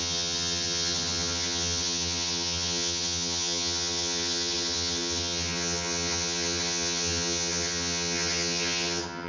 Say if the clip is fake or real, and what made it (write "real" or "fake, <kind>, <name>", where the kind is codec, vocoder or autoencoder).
fake, vocoder, HiFi-GAN